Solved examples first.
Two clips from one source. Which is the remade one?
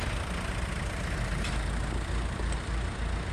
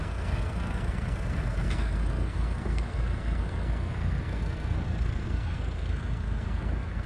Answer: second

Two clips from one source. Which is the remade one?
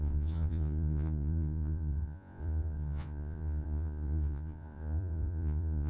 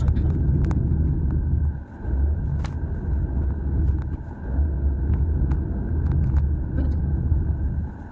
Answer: first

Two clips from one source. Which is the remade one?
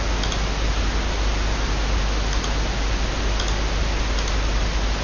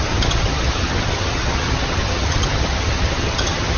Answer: second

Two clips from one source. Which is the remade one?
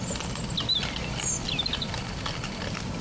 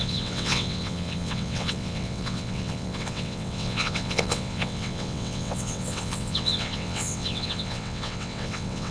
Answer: second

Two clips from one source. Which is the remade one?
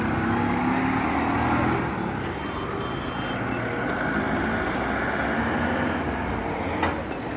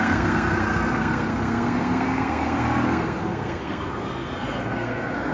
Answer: second